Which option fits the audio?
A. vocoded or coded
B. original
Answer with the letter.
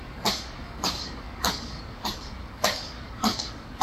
A